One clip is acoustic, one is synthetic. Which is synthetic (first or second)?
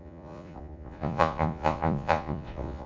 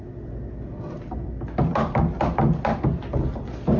first